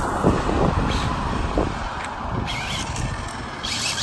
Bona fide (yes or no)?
yes